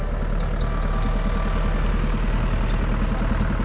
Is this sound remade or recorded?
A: recorded